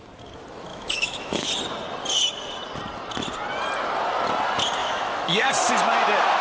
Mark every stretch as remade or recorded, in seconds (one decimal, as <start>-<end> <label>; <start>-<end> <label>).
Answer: 0.0-0.7 recorded; 0.7-1.5 remade; 1.5-4.8 recorded; 4.8-5.5 remade; 5.5-6.4 recorded